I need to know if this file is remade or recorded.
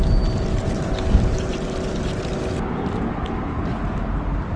recorded